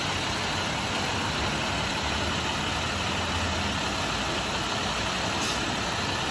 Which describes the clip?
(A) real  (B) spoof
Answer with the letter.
A